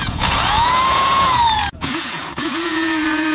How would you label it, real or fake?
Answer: fake